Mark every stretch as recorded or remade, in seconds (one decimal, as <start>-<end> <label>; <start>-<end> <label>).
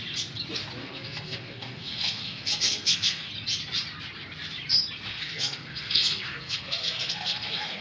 0.0-0.8 recorded; 0.8-3.3 remade; 3.3-5.1 recorded; 5.1-7.8 remade